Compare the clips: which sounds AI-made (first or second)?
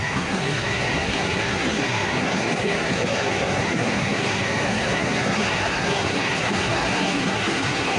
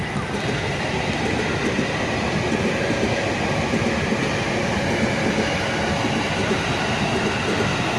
first